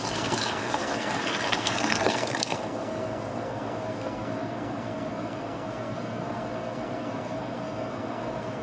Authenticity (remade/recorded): remade